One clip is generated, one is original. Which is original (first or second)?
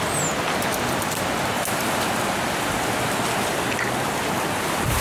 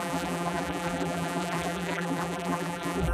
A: first